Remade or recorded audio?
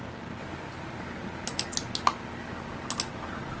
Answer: recorded